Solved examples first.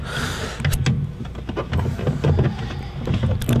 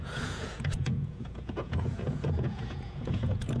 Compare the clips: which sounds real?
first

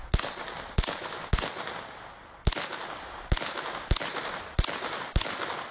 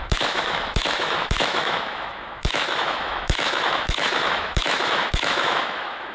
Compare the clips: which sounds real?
first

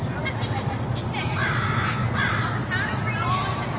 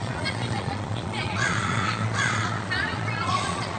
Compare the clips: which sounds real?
first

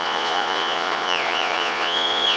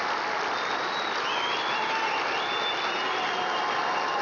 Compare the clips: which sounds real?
second